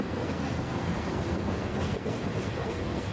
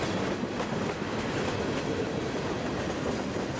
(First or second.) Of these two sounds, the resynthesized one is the first